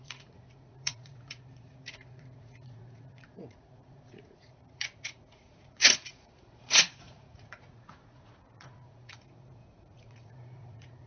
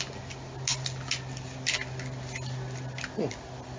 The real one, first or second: second